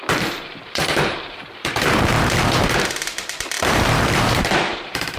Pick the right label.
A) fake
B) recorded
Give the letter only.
A